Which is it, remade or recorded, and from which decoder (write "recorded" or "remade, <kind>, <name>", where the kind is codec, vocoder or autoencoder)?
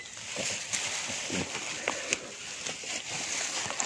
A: recorded